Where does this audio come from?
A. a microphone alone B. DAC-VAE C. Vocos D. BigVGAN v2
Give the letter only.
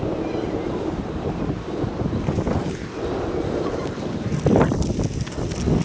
A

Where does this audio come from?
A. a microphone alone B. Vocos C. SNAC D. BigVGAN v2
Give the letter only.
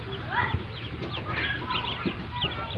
A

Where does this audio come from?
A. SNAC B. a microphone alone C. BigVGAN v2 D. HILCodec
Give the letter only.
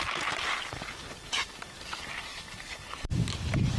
C